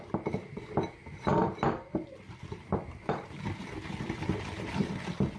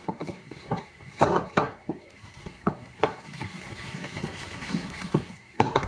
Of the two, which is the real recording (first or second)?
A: first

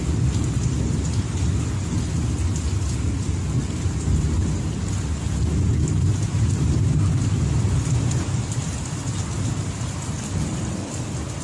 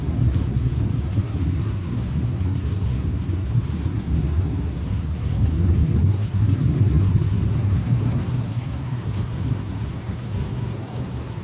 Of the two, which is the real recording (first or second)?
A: first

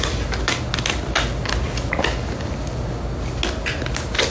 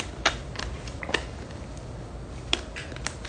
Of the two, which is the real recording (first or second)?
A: first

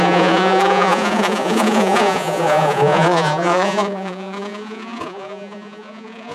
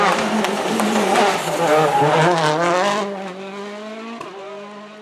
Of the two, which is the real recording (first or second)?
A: second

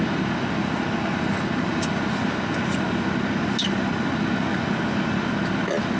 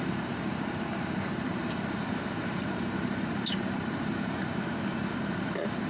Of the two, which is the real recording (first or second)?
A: first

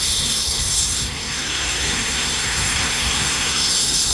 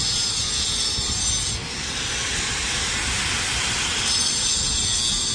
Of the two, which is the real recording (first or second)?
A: second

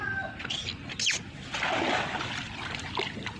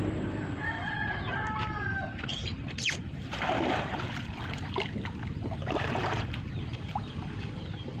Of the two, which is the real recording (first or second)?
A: first